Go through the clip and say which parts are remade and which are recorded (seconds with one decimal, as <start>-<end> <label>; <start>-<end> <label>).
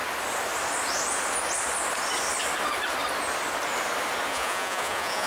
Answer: 0.0-4.3 recorded; 4.3-5.3 remade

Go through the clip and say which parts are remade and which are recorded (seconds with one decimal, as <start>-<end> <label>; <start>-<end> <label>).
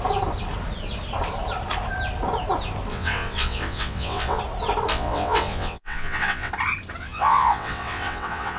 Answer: 0.0-2.9 recorded; 2.9-4.4 remade; 4.4-4.9 recorded; 4.9-6.5 remade; 6.5-7.0 recorded; 7.0-8.6 remade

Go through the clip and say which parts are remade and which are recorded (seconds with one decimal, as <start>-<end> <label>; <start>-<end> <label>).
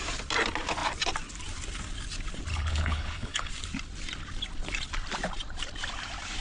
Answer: 0.0-2.5 recorded; 2.5-3.5 remade; 3.5-6.4 recorded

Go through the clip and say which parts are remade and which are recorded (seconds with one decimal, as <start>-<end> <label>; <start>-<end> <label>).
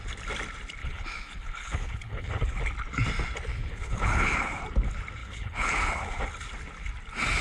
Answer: 0.0-0.8 recorded; 0.8-2.6 remade; 2.6-3.5 recorded; 3.5-4.6 remade; 4.6-5.2 recorded; 5.2-6.2 remade; 6.2-7.4 recorded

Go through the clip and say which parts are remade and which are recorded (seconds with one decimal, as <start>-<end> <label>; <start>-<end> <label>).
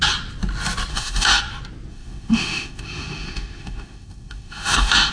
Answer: 0.0-0.9 recorded; 0.9-1.4 remade; 1.4-1.9 recorded; 1.9-5.1 remade